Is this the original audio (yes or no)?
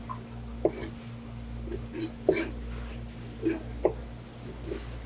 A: yes